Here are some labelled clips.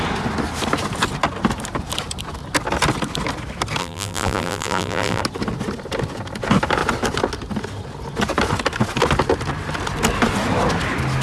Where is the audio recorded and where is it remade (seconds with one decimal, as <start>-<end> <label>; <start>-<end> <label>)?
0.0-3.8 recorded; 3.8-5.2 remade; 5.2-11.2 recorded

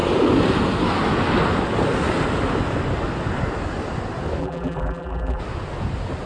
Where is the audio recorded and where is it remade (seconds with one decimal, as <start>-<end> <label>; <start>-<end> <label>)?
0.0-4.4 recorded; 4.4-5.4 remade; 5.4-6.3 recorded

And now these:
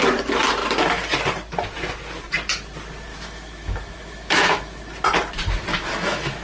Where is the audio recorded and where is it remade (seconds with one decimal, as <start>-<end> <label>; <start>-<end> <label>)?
0.0-3.1 recorded; 3.1-4.8 remade; 4.8-5.7 recorded; 5.7-6.4 remade